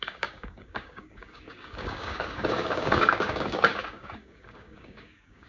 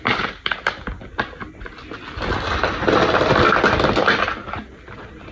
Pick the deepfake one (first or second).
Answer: first